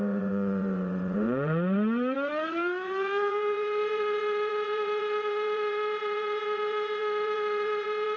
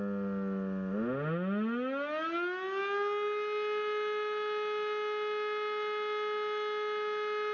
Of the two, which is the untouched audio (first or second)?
second